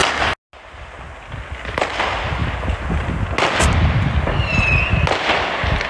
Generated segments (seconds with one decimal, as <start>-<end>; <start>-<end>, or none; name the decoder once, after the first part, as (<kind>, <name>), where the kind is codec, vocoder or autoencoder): none